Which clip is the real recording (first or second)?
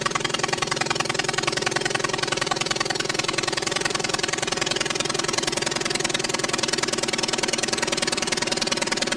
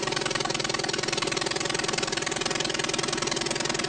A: second